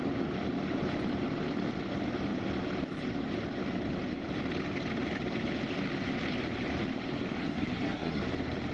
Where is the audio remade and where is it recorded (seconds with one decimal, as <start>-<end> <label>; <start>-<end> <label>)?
0.0-7.4 recorded; 7.4-8.2 remade; 8.2-8.7 recorded

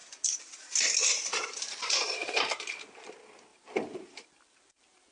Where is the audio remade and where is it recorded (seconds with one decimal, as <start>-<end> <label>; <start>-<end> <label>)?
0.0-3.1 remade; 3.1-3.5 recorded; 3.5-5.1 remade

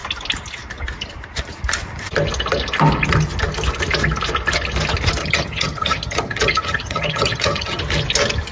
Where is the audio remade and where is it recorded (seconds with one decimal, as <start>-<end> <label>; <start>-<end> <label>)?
0.0-5.2 recorded; 5.2-7.8 remade; 7.8-8.5 recorded

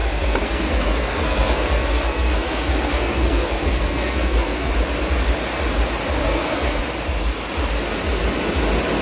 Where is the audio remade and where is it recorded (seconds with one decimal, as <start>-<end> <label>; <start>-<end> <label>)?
0.0-4.7 remade; 4.7-6.2 recorded; 6.2-6.8 remade; 6.8-9.0 recorded

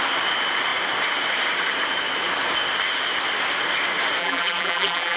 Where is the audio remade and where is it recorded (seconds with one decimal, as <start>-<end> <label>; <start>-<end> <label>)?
0.0-4.2 recorded; 4.2-5.2 remade

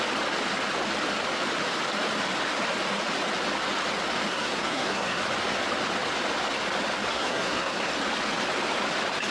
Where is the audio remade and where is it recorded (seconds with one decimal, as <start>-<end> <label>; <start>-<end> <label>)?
0.0-4.3 recorded; 4.3-5.2 remade; 5.2-7.1 recorded; 7.1-7.9 remade; 7.9-9.3 recorded

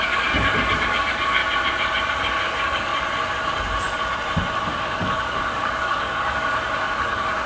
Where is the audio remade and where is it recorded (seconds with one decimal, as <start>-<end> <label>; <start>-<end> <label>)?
0.0-1.4 remade; 1.4-2.1 recorded; 2.1-2.9 remade; 2.9-4.6 recorded; 4.6-7.5 remade